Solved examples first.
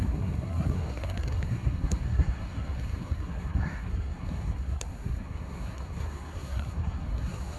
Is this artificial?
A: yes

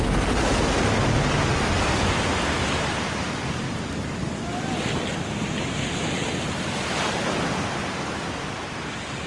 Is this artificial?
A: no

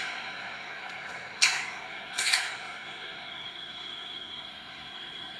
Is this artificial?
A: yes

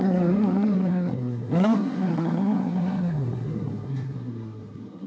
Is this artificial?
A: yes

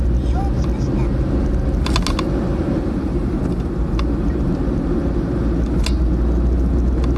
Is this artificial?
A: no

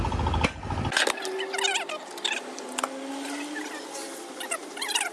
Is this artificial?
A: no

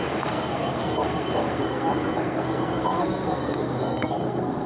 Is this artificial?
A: yes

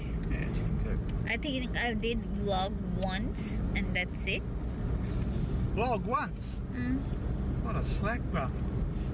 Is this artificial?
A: no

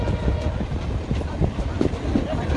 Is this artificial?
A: no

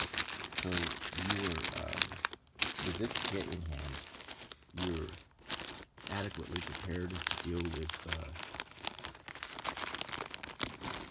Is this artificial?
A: no